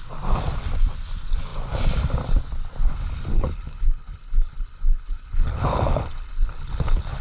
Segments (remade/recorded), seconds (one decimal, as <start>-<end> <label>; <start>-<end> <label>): 0.0-3.3 recorded; 3.3-7.2 remade